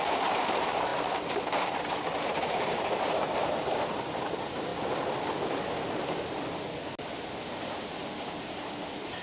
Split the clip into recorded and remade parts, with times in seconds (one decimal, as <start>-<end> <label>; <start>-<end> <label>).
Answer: 0.0-4.7 remade; 4.7-8.5 recorded; 8.5-9.2 remade